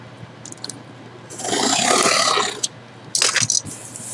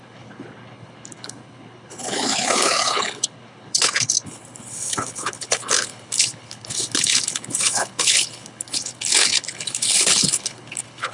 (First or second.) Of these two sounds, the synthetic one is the second